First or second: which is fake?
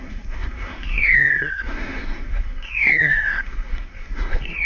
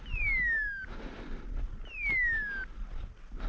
first